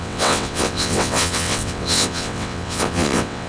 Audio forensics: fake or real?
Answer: fake